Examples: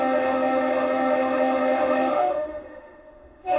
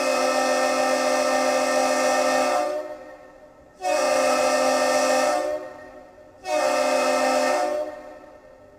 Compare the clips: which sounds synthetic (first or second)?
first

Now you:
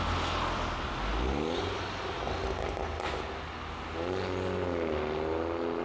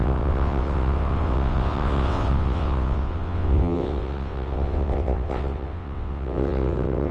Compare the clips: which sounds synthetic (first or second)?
second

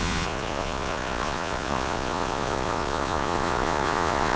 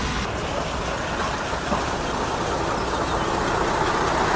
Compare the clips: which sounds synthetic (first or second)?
first